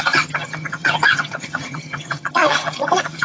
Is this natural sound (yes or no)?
no